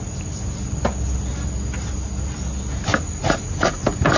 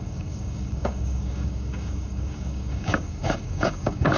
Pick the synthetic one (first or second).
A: second